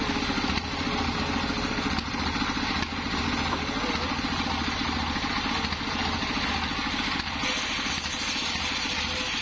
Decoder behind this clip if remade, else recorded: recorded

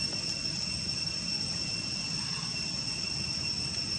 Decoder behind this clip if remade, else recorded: recorded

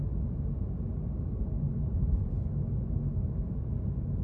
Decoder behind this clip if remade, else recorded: recorded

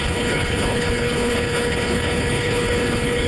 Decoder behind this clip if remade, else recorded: remade, codec, HILCodec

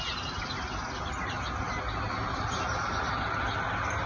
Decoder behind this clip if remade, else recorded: recorded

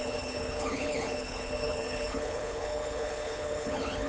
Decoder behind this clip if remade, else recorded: remade, codec, HILCodec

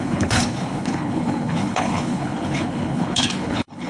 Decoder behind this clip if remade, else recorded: remade, codec, HILCodec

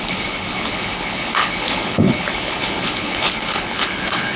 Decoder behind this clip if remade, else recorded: remade, codec, HILCodec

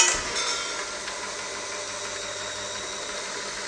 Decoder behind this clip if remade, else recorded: recorded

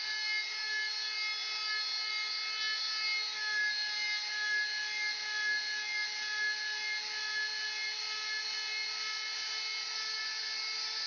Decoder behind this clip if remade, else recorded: recorded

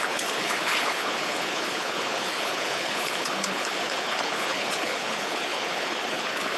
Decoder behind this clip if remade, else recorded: remade, codec, HILCodec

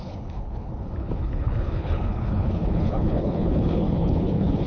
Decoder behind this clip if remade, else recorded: remade, codec, HILCodec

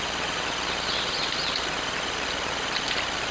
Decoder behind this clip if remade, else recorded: recorded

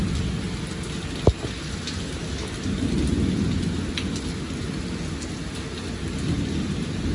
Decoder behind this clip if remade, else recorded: recorded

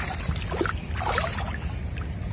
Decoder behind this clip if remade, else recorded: recorded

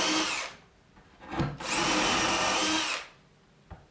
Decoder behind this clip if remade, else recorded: recorded